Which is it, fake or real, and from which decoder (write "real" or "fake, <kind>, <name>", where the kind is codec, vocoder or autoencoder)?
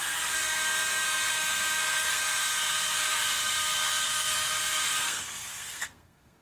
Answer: fake, codec, SNAC